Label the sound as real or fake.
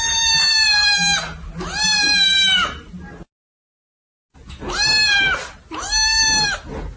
real